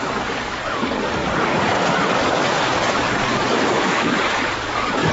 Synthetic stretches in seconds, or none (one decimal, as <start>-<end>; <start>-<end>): 0.0-5.1